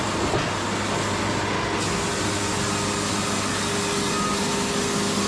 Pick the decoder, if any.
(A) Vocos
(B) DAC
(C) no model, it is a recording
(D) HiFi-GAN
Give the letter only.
C